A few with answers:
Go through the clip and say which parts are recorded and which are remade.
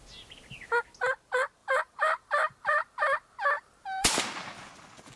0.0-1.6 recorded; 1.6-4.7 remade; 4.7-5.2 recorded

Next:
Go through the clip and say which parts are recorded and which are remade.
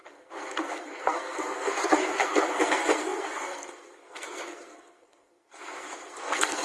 0.0-6.6 remade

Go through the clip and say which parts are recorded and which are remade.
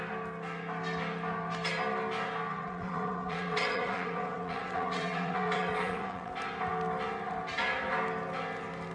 0.0-2.5 recorded; 2.5-6.3 remade; 6.3-8.9 recorded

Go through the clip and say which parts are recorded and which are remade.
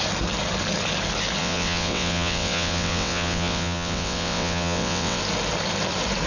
0.0-1.4 recorded; 1.4-5.2 remade; 5.2-6.3 recorded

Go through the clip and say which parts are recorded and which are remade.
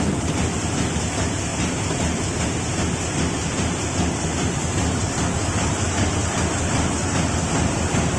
0.0-8.2 recorded